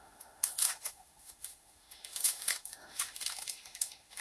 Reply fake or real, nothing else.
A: fake